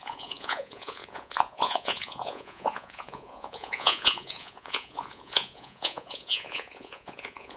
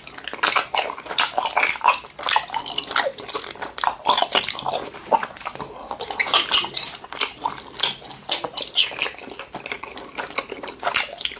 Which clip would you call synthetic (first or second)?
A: first